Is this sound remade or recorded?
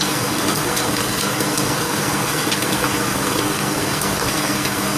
remade